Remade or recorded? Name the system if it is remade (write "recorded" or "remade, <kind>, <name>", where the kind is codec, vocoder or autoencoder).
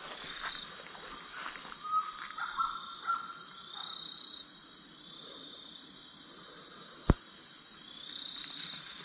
recorded